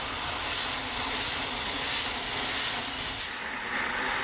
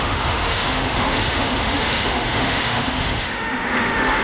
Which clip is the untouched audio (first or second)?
first